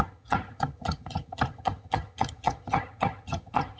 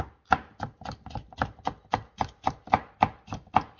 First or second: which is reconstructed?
first